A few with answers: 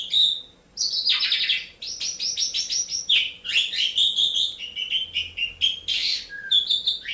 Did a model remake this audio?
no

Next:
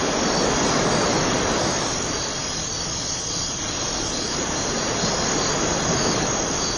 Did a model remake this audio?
no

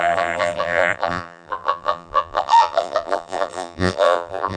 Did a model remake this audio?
yes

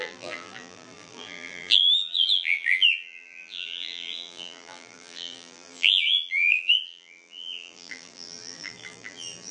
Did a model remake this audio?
yes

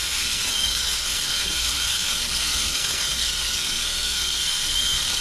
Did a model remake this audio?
yes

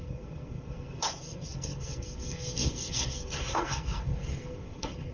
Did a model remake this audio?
yes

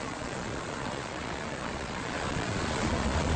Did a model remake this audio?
yes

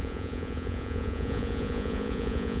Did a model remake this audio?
yes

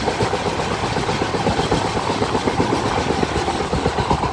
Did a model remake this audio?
no